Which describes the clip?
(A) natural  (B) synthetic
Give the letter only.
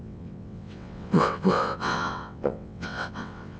B